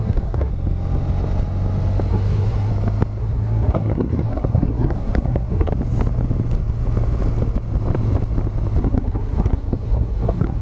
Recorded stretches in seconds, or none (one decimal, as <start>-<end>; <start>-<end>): 0.5-2.1; 2.7-3.2; 5.7-8.8